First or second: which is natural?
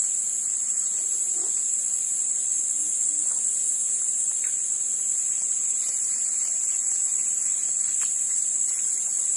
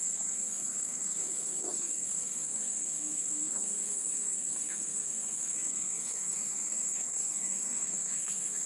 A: first